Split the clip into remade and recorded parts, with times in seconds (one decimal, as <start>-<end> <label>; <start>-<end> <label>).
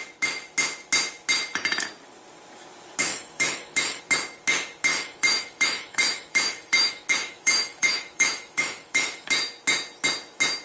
0.0-3.1 recorded; 3.1-4.0 remade; 4.0-4.9 recorded; 4.9-9.3 remade; 9.3-10.6 recorded